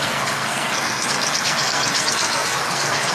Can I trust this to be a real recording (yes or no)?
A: no